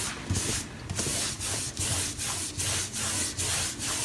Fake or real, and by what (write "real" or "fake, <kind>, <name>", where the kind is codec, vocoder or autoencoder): real